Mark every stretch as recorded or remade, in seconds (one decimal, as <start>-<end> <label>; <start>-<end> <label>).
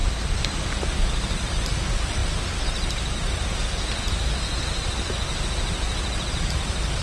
0.0-0.5 recorded; 0.5-2.2 remade; 2.2-3.3 recorded; 3.3-7.0 remade